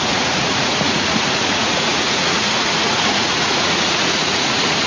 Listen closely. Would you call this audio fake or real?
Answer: fake